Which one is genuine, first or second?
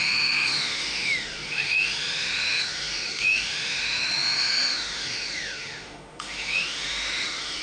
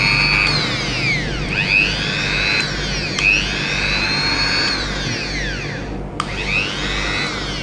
second